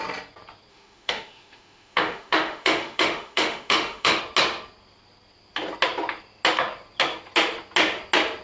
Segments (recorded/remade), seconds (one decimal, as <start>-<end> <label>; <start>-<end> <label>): 0.0-0.7 recorded; 0.7-4.2 remade; 4.2-8.4 recorded